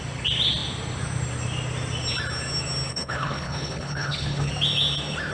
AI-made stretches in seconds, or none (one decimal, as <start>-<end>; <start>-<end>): 2.9-4.5